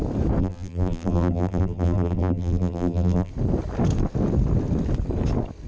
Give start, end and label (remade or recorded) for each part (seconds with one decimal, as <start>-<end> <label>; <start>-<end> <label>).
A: 0.0-0.4 recorded; 0.4-3.3 remade; 3.3-5.7 recorded